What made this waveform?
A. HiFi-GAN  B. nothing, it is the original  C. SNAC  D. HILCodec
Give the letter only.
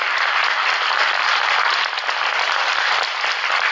B